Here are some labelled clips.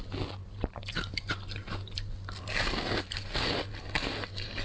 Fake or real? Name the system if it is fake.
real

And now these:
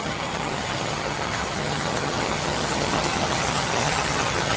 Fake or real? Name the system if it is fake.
fake, vocoder, HiFi-GAN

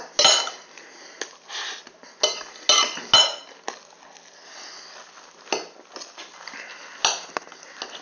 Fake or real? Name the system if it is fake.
real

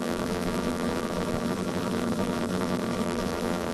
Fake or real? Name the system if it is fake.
fake, vocoder, BigVGAN v2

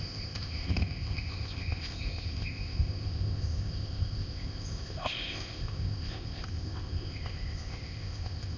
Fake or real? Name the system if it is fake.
fake, codec, ZipCodec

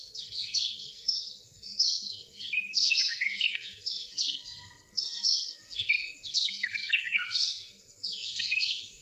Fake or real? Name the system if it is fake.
fake, codec, SNAC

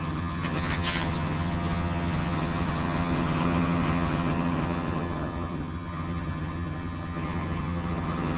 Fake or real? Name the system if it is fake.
fake, vocoder, HiFi-GAN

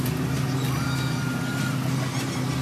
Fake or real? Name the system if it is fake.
real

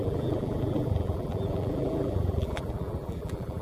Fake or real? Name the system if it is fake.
fake, vocoder, BigVGAN v2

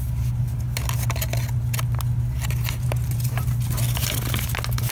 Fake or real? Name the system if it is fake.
real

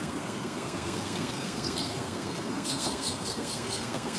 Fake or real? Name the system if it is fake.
fake, codec, SNAC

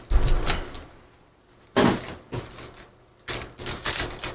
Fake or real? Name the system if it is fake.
real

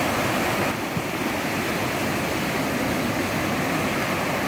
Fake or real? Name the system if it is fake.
real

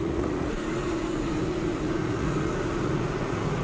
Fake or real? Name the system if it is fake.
fake, vocoder, Vocos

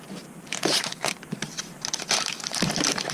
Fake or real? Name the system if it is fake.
fake, vocoder, BigVGAN v2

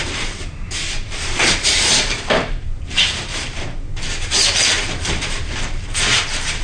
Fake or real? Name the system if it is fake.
fake, vocoder, BigVGAN v2